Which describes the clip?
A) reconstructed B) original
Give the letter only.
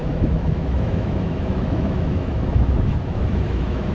A